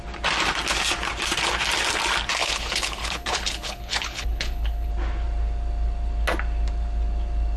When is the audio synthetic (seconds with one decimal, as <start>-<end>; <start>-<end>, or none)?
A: 2.4-4.9